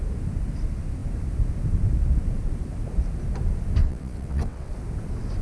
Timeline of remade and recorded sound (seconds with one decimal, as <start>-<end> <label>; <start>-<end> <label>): 0.0-3.8 recorded; 3.8-4.7 remade; 4.7-5.4 recorded